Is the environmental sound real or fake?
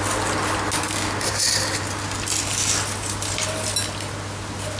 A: real